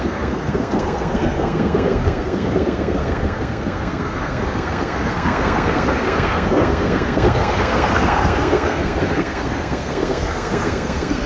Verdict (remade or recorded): remade